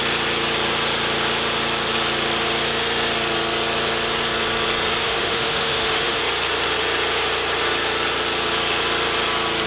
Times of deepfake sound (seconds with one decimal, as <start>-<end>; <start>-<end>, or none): 5.0-6.2